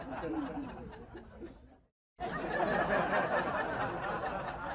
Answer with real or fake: real